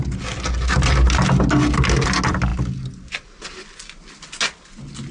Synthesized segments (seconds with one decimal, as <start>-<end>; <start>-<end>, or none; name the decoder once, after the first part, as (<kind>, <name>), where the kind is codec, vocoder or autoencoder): none